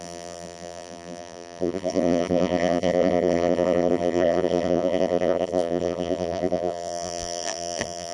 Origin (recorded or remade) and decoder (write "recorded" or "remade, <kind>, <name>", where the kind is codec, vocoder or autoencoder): remade, vocoder, BigVGAN v2